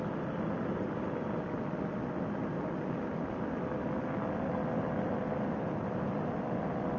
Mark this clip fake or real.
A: real